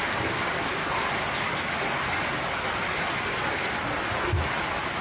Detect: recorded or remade recorded